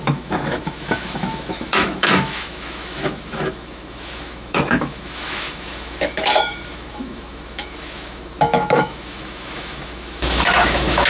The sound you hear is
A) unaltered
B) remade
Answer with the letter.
B